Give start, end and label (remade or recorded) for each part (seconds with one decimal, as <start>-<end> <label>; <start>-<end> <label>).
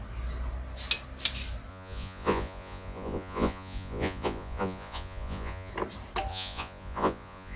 0.0-1.7 recorded; 1.7-5.7 remade; 5.7-6.3 recorded; 6.3-7.6 remade